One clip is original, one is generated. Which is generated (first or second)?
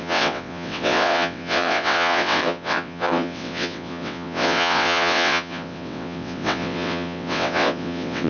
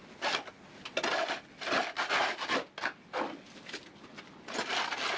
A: first